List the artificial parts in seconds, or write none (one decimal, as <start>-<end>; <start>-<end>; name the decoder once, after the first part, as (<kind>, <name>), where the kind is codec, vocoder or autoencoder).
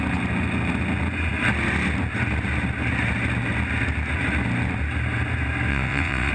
5.7-6.3 (vocoder, WaveNeXt)